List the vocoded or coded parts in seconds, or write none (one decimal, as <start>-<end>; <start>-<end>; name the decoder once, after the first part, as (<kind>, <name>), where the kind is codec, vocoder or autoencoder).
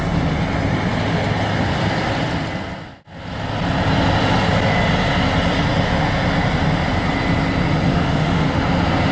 7.9-8.6 (autoencoder, DAC-VAE)